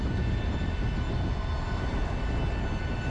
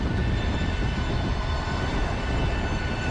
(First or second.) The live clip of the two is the first